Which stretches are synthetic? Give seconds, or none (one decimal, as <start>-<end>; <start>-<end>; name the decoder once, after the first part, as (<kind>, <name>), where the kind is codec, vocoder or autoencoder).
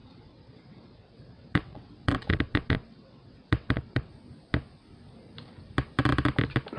0.0-4.1 (vocoder, WaveNeXt)